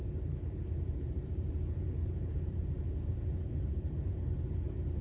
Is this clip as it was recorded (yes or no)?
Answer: no